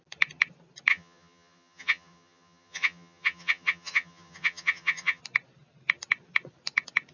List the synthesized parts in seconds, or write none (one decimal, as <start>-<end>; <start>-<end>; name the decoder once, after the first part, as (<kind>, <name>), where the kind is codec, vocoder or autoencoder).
0.9-5.2 (vocoder, HiFi-GAN)